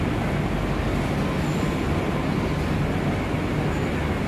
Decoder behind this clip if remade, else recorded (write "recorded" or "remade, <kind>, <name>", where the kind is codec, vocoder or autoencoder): recorded